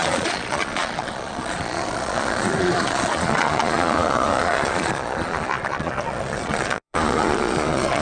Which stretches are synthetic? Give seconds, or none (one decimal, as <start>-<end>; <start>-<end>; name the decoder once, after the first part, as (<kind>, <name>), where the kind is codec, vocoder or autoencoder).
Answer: 0.0-8.0 (vocoder, Vocos)